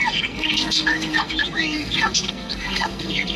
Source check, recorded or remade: remade